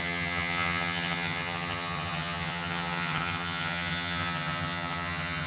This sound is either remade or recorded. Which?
remade